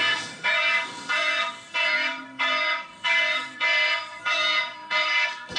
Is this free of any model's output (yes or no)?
no